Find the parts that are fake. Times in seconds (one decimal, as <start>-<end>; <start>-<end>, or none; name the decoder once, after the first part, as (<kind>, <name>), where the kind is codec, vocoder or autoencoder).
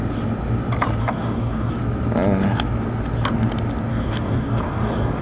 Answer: 1.0-1.7 (codec, DAC); 3.9-5.2